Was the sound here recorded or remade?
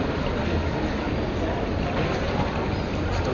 recorded